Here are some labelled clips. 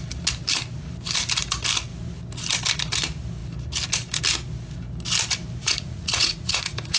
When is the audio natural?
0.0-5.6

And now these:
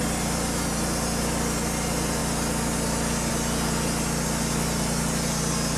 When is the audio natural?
0.0-5.8

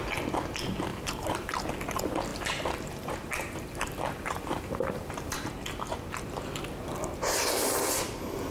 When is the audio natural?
0.0-0.9; 1.5-2.3; 5.5-8.5

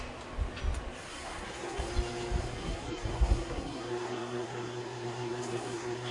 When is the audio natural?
0.0-1.1; 1.9-2.4

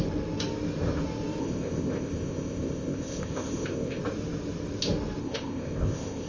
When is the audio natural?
0.0-1.4; 4.0-5.2

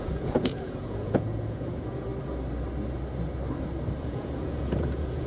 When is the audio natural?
2.1-4.0

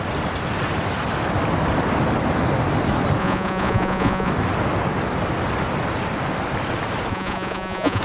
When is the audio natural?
0.0-3.2; 4.3-7.1

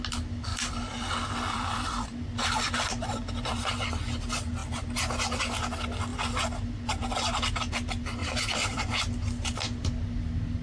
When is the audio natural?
0.0-0.5; 3.8-6.1; 7.7-8.2; 8.8-10.6